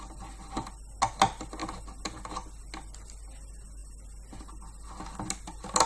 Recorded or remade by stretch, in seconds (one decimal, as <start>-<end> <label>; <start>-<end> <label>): 0.0-5.9 recorded